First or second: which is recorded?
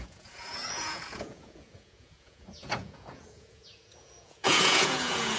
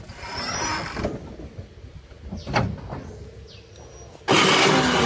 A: second